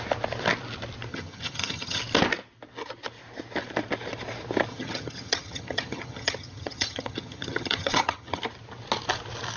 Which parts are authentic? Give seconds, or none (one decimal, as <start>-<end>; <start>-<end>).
0.0-1.1; 2.0-4.7; 8.4-9.6